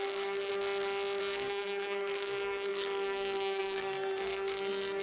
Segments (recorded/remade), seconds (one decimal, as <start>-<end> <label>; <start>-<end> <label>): 0.0-0.5 remade; 0.5-1.2 recorded; 1.2-5.0 remade